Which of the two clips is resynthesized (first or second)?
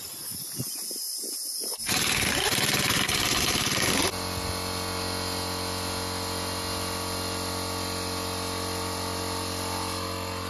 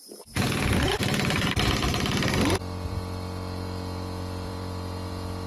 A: second